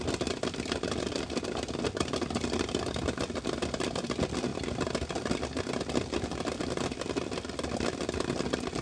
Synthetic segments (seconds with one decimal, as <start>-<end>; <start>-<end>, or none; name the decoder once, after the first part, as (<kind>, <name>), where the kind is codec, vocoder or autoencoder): none